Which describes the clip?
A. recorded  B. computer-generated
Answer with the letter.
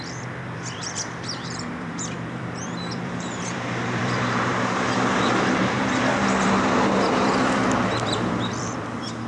B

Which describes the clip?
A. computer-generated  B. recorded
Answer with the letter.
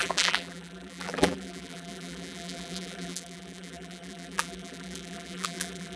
A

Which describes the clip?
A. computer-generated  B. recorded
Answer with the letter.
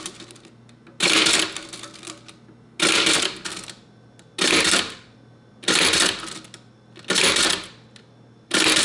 B